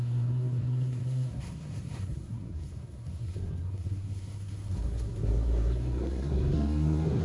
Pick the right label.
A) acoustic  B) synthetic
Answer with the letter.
B